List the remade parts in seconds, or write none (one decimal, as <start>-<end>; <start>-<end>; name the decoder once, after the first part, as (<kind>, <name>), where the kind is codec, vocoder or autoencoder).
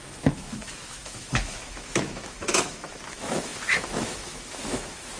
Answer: 0.0-5.2 (autoencoder, DAC-VAE)